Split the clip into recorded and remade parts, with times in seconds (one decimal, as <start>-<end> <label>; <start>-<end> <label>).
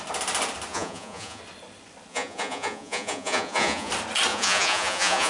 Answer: 0.0-0.7 recorded; 0.7-1.4 remade; 1.4-2.1 recorded; 2.1-3.9 remade; 3.9-4.3 recorded; 4.3-5.3 remade